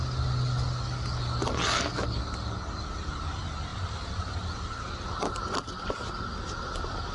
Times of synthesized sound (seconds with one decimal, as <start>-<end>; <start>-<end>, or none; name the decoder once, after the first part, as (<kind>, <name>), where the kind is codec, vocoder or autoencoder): 3.7-5.6 (vocoder, BigVGAN v2)